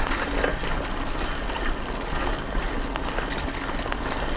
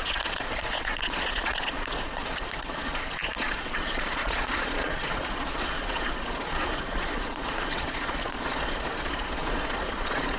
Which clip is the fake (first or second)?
second